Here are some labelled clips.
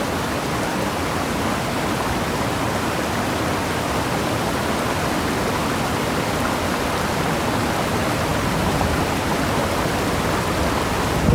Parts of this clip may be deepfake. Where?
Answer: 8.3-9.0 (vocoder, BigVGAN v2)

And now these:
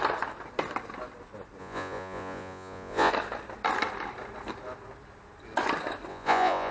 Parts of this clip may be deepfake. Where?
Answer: 1.6-3.1 (vocoder, Vocos); 6.1-6.7

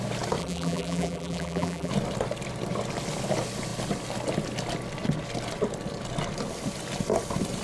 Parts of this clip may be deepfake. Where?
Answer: 0.4-1.9 (vocoder, BigVGAN v2)

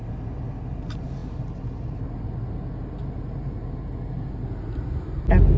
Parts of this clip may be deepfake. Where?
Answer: none

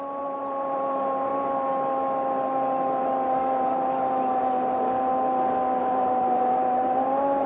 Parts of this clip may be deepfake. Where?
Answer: 0.0-1.3 (vocoder, BigVGAN v2); 5.8-7.5

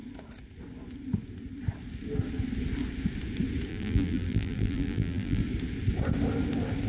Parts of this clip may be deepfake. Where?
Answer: 3.7-5.4 (vocoder, BigVGAN v2)

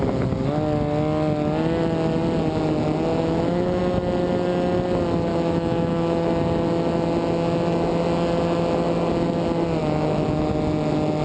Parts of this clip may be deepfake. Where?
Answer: 3.1-3.8 (autoencoder, DAC-VAE); 5.3-6.3; 9.8-10.5

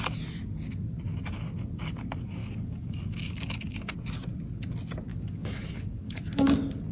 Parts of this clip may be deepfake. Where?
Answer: 2.4-3.9 (codec, DAC); 5.1-6.2